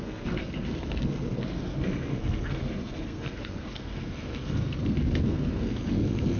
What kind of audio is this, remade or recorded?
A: remade